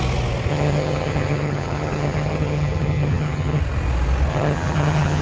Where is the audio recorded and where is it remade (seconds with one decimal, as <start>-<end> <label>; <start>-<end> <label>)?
0.0-0.5 recorded; 0.5-3.6 remade; 3.6-4.3 recorded; 4.3-5.2 remade